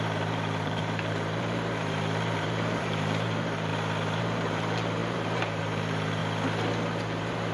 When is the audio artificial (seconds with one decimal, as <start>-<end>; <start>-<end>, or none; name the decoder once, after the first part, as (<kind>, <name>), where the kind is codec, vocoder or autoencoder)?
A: 0.0-3.7 (vocoder, BigVGAN v2); 4.2-6.2; 7.0-7.5